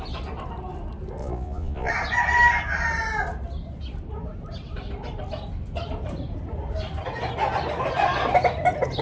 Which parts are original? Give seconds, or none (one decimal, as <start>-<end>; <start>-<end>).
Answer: 0.0-1.2; 1.9-9.0